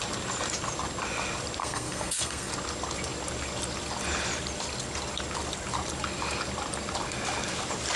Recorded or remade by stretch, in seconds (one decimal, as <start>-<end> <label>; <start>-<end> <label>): 0.0-1.6 recorded; 1.6-2.5 remade; 2.5-8.0 recorded